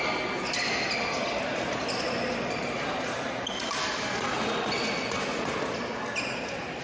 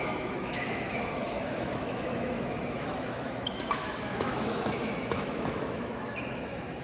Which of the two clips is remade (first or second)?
second